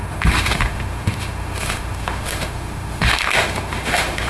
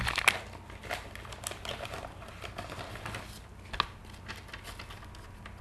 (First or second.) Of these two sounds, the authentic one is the second